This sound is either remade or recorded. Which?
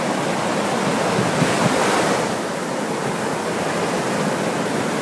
recorded